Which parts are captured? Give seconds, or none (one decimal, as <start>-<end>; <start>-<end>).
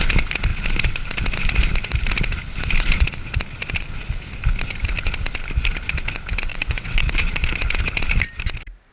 0.0-6.5; 7.1-8.9